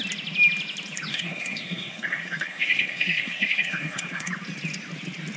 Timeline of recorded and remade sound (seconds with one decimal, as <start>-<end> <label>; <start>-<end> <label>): 0.0-1.1 recorded; 1.1-4.3 remade; 4.3-5.4 recorded